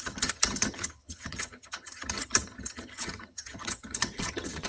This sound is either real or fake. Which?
fake